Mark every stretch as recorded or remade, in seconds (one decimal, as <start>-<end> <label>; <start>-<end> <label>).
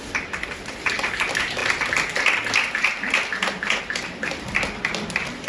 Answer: 0.0-1.6 remade; 1.6-3.8 recorded; 3.8-5.5 remade